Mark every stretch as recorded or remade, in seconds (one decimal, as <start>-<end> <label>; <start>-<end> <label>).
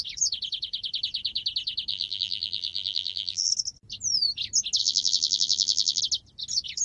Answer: 0.0-1.9 recorded; 1.9-3.5 remade; 3.5-4.8 recorded; 4.8-6.0 remade; 6.0-6.8 recorded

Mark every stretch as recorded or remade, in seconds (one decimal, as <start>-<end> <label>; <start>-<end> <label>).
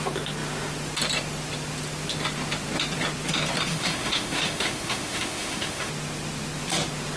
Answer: 0.0-3.7 recorded; 3.7-5.9 remade; 5.9-7.2 recorded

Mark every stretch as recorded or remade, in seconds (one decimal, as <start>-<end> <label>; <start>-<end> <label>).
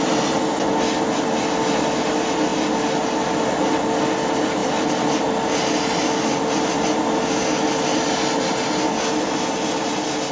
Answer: 0.0-10.3 recorded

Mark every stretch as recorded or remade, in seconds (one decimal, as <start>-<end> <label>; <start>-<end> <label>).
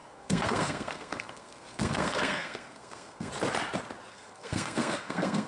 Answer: 0.0-3.3 remade; 3.3-4.1 recorded; 4.1-5.5 remade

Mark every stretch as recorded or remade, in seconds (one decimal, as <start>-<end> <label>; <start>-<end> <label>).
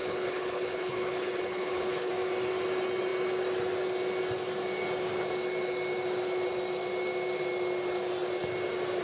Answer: 0.0-2.1 remade; 2.1-9.0 recorded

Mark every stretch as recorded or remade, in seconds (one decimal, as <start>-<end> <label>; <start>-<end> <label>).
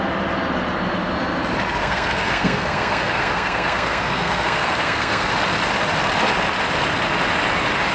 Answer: 0.0-1.8 recorded; 1.8-5.3 remade; 5.3-7.9 recorded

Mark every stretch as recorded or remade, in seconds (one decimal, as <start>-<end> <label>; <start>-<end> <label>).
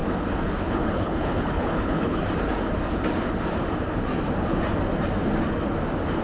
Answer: 0.0-0.6 recorded; 0.6-2.2 remade; 2.2-6.2 recorded